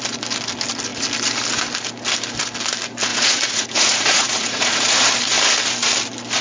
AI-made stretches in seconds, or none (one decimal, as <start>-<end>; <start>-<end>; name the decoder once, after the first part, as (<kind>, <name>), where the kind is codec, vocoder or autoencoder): 3.1-5.1 (vocoder, Vocos)